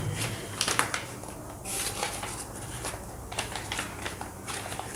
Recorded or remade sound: remade